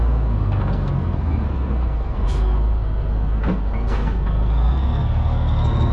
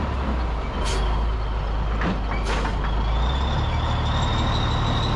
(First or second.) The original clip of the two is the second